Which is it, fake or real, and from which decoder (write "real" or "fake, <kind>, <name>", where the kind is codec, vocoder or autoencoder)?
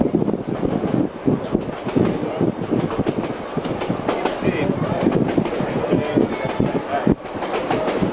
real